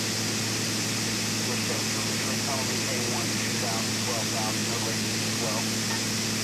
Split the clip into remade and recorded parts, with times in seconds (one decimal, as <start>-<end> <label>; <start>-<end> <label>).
0.0-6.4 recorded

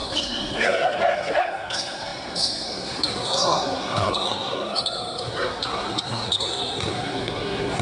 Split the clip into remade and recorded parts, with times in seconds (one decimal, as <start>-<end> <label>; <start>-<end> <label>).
0.0-7.8 remade

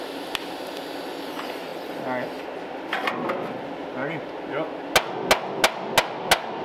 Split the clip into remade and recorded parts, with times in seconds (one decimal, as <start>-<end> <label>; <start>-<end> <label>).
0.0-6.6 recorded

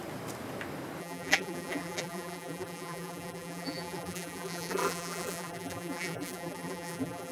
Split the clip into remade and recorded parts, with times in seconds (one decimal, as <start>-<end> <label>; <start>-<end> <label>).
0.0-1.0 recorded; 1.0-7.3 remade

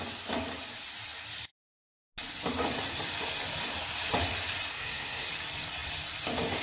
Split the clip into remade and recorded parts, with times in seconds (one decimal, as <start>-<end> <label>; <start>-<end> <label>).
0.0-4.7 recorded; 4.7-5.3 remade; 5.3-6.6 recorded

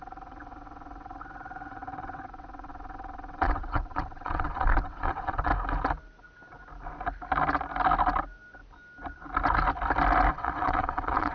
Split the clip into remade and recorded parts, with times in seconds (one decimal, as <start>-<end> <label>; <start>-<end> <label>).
0.0-5.5 remade; 5.5-10.3 recorded; 10.3-11.3 remade

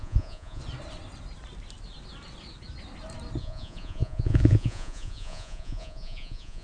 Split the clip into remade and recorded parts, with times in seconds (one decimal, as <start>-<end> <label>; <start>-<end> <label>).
0.0-0.6 remade; 0.6-3.4 recorded; 3.4-6.6 remade

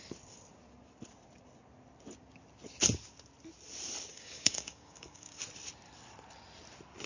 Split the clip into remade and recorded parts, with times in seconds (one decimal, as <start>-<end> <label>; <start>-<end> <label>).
0.0-4.1 recorded; 4.1-5.4 remade; 5.4-7.1 recorded